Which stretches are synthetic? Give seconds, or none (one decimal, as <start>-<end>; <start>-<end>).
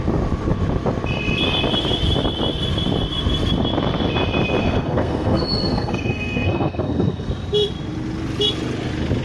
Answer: 4.6-7.3